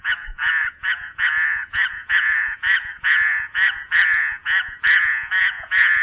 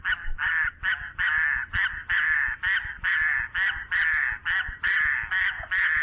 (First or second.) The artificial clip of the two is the first